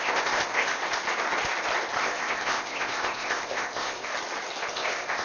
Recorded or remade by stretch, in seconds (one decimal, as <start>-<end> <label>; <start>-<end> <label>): 0.0-0.7 remade; 0.7-2.0 recorded; 2.0-4.1 remade; 4.1-4.7 recorded; 4.7-5.2 remade